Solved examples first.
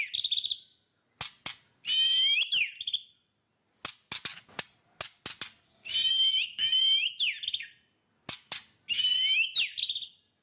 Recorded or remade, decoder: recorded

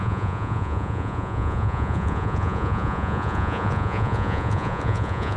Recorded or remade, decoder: remade, vocoder, Vocos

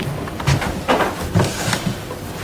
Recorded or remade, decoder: recorded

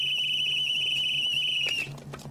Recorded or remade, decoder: recorded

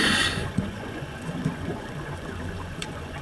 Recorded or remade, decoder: remade, vocoder, Vocos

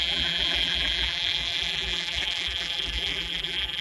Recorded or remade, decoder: remade, vocoder, BigVGAN v2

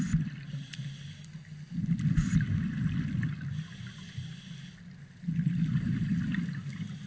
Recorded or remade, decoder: recorded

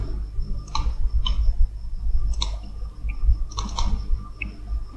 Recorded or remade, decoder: recorded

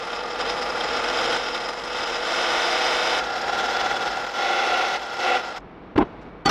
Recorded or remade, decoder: recorded